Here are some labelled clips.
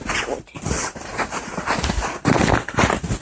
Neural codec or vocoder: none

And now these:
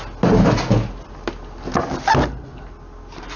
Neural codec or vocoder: none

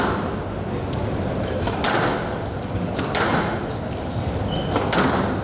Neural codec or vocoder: none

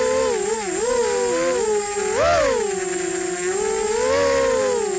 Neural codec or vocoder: none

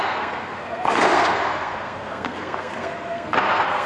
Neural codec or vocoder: codec, SNAC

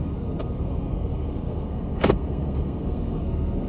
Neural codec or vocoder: codec, SNAC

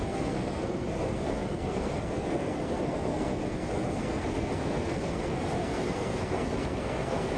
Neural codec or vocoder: codec, SNAC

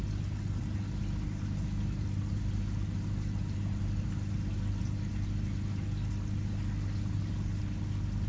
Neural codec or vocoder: none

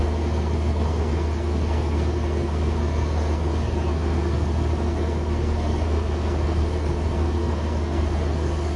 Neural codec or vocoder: codec, SNAC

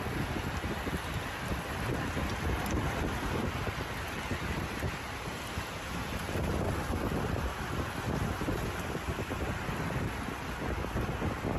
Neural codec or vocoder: none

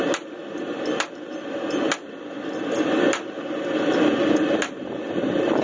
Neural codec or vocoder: none